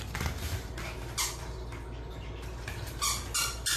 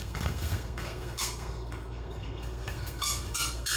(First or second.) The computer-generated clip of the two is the second